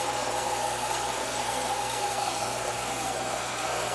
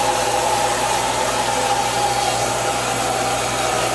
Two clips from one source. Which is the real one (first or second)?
second